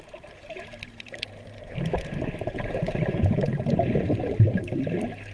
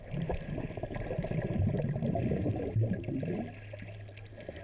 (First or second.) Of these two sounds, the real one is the second